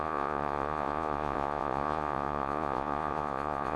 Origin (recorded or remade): remade